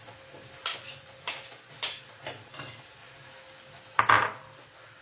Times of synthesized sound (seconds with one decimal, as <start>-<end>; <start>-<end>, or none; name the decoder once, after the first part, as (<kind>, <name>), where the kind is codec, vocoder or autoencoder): 0.7-1.7 (vocoder, Vocos)